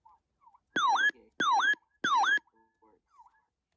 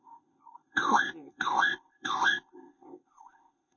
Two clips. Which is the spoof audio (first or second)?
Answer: second